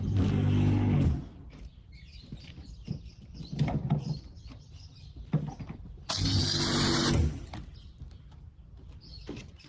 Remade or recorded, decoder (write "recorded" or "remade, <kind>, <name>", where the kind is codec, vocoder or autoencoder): recorded